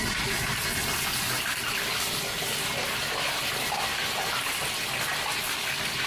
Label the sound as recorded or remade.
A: recorded